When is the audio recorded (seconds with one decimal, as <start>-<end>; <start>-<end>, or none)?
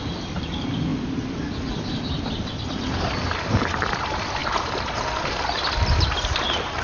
0.0-0.9; 3.6-6.8